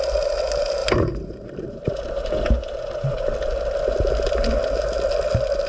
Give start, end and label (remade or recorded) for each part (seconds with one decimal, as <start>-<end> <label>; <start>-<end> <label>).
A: 0.0-0.8 recorded; 0.8-3.2 remade; 3.2-5.7 recorded